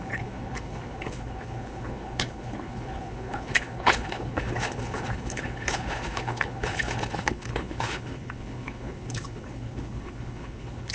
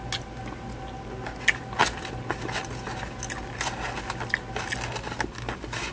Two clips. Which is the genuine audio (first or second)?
second